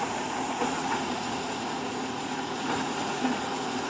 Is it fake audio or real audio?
fake